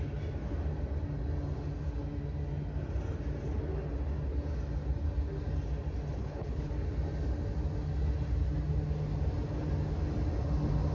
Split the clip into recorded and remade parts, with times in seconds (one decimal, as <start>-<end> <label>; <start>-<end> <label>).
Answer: 0.0-6.2 recorded; 6.2-6.7 remade; 6.7-10.9 recorded